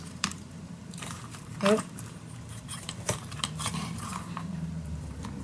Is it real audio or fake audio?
fake